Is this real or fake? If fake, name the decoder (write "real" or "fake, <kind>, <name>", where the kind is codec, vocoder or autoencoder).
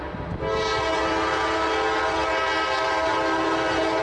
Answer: real